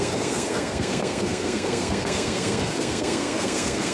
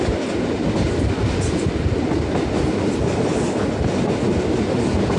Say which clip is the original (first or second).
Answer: second